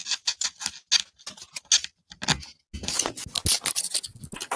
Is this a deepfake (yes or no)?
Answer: no